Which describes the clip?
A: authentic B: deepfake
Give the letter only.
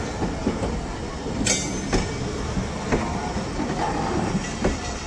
A